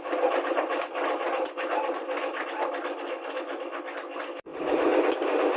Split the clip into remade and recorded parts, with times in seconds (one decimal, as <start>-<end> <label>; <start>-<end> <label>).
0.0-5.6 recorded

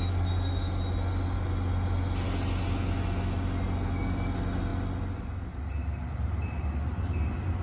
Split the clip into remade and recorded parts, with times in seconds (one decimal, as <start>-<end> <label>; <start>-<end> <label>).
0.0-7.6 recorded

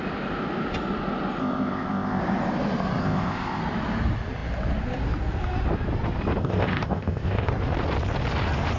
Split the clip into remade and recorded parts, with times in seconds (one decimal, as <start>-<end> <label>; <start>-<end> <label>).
0.0-1.4 recorded; 1.4-2.2 remade; 2.2-3.0 recorded; 3.0-3.6 remade; 3.6-6.4 recorded; 6.4-7.5 remade; 7.5-8.8 recorded

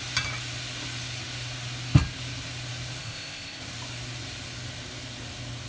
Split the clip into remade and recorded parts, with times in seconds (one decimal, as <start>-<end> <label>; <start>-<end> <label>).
0.0-3.0 recorded; 3.0-3.6 remade; 3.6-5.7 recorded